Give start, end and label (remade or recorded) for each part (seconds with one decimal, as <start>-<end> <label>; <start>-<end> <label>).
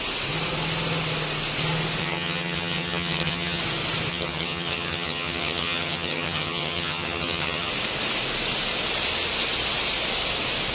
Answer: 0.0-2.0 recorded; 2.0-3.6 remade; 3.6-4.1 recorded; 4.1-7.7 remade; 7.7-10.7 recorded